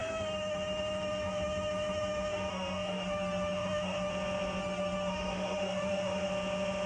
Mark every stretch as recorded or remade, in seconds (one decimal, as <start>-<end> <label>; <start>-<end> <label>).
0.0-4.1 remade; 4.1-4.6 recorded; 4.6-6.3 remade; 6.3-6.9 recorded